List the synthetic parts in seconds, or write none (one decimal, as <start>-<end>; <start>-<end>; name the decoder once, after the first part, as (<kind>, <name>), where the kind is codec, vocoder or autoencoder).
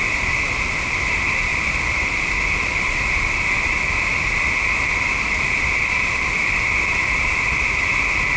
1.5-2.3 (vocoder, BigVGAN v2); 4.1-7.6